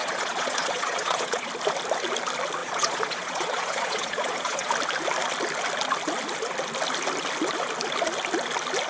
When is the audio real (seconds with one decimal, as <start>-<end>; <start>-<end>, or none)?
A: 1.5-2.6; 4.7-8.9

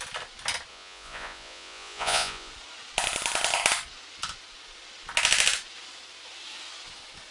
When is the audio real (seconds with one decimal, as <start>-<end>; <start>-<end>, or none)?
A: 0.0-0.7; 2.5-7.3